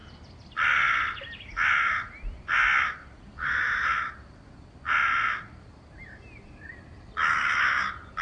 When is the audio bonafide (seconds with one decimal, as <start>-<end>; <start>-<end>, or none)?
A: 0.0-8.2